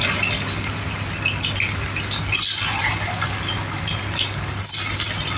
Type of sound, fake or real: real